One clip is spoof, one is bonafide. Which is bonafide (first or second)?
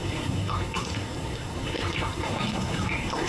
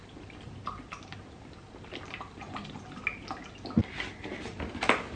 second